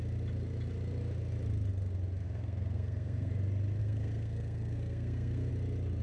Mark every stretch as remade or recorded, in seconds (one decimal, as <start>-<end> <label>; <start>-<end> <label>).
0.0-2.2 recorded; 2.2-3.3 remade; 3.3-3.8 recorded; 3.8-5.5 remade; 5.5-6.0 recorded